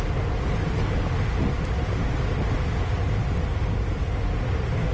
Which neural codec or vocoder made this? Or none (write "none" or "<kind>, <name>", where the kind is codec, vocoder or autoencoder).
none